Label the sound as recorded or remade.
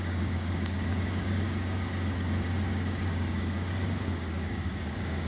remade